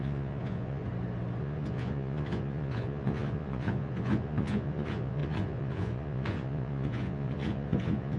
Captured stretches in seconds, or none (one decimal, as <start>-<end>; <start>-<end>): 0.8-1.4